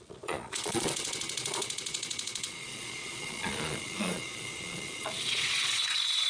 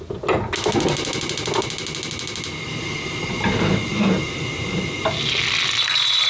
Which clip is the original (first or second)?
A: second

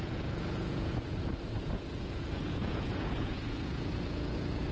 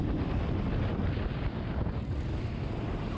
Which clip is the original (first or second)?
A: second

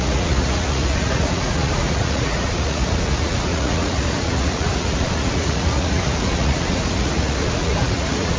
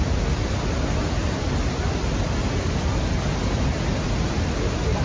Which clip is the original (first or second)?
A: second